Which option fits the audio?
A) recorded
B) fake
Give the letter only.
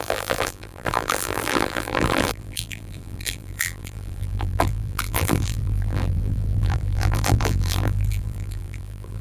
B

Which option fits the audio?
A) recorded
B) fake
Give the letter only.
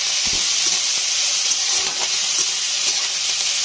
A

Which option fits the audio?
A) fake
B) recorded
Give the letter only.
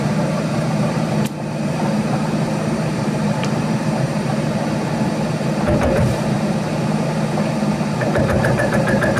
A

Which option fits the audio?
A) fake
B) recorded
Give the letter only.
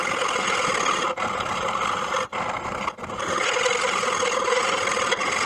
B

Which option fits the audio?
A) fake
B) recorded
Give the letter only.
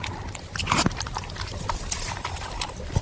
B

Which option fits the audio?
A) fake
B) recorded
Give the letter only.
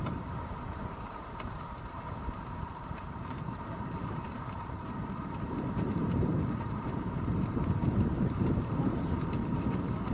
A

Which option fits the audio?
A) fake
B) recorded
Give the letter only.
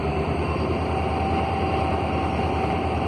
A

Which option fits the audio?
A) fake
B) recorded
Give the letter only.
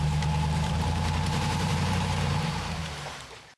A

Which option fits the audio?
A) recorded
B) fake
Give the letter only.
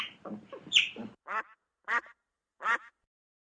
B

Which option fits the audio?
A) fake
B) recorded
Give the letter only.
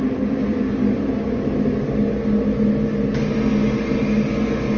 B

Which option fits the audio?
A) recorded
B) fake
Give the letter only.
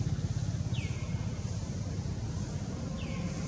A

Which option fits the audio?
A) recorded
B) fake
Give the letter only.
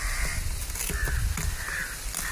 B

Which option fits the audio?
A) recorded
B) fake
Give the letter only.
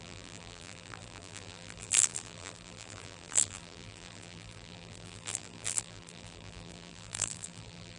B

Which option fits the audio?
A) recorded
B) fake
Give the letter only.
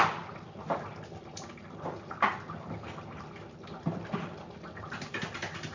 A